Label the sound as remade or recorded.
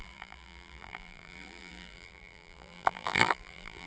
remade